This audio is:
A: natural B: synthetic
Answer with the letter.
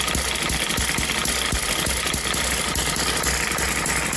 A